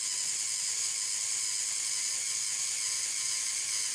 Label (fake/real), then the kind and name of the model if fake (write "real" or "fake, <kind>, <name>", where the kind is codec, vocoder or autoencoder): real